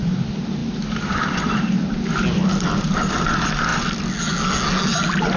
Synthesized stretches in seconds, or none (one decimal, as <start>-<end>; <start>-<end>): 0.6-1.6